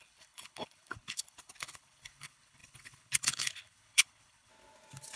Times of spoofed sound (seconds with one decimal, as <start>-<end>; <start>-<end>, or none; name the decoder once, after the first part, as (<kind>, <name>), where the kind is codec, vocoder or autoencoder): 0.0-4.5 (codec, HILCodec)